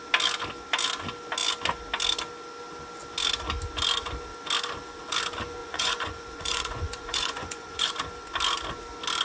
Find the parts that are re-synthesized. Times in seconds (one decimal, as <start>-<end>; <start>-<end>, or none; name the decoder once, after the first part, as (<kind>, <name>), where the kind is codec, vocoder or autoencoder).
5.6-7.9 (vocoder, Vocos)